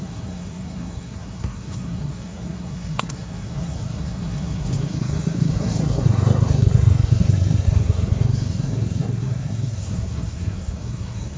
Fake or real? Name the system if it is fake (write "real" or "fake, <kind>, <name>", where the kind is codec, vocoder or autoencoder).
fake, codec, SNAC